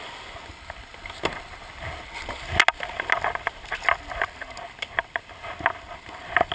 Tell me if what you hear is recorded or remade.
recorded